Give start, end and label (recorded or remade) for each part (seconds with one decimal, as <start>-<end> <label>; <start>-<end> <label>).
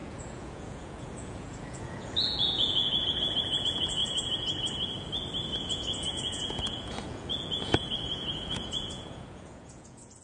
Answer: 0.0-4.0 remade; 4.0-5.6 recorded; 5.6-10.2 remade